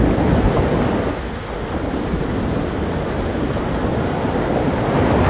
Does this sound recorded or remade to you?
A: recorded